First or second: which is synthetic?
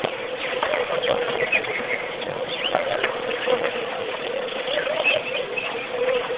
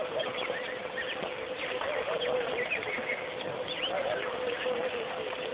first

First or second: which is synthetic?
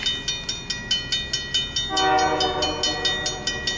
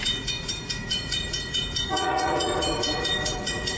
second